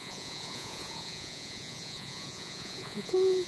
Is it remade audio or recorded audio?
remade